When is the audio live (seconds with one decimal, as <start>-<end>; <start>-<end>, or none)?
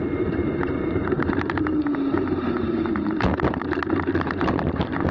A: none